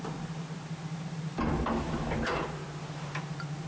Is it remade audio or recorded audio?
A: recorded